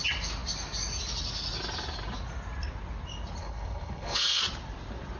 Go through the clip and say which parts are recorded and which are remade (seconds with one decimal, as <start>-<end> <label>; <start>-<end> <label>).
0.0-3.4 recorded; 3.4-4.4 remade; 4.4-5.2 recorded